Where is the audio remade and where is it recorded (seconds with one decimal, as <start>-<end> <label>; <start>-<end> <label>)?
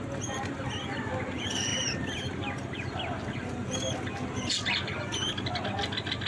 0.0-6.3 recorded